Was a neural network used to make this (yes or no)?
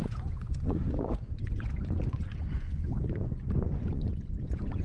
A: yes